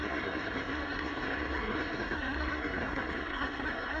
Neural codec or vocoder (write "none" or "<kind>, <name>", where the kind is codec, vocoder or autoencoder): codec, SNAC